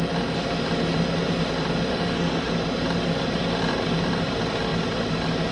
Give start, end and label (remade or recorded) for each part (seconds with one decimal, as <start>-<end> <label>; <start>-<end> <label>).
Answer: 0.0-1.9 recorded; 1.9-2.5 remade; 2.5-5.5 recorded